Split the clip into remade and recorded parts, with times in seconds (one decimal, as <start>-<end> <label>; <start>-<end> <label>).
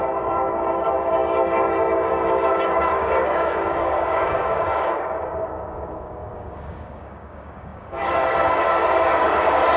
0.0-9.8 remade